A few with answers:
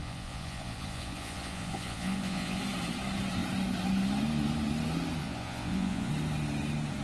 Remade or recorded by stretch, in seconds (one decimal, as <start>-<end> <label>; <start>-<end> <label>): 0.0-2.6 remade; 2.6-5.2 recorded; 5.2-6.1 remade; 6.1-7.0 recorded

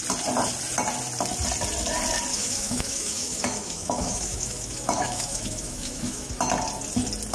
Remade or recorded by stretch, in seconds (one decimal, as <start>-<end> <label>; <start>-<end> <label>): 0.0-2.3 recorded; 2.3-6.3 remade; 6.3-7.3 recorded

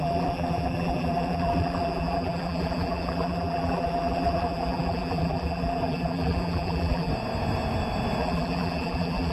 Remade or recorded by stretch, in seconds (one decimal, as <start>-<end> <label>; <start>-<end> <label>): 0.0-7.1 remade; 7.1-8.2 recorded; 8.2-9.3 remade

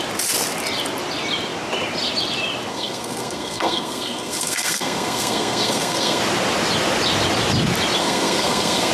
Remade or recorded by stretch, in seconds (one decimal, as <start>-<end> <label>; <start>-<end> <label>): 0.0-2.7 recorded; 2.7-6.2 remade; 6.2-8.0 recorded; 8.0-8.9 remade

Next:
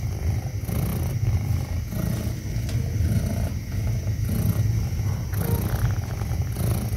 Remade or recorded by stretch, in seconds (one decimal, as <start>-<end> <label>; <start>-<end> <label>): 0.0-7.0 recorded

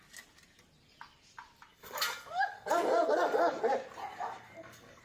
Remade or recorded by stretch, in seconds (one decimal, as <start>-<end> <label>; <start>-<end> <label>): 0.0-1.7 recorded; 1.7-3.6 remade; 3.6-4.1 recorded; 4.1-5.0 remade

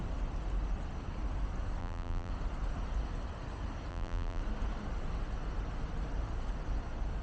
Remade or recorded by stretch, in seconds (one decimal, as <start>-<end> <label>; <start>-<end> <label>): 0.0-1.8 recorded; 1.8-2.3 remade; 2.3-3.9 recorded; 3.9-4.4 remade; 4.4-7.2 recorded